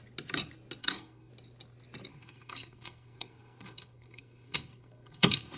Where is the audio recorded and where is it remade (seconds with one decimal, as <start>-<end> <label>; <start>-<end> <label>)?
0.0-0.8 recorded; 0.8-1.3 remade; 1.3-2.1 recorded; 2.1-5.6 remade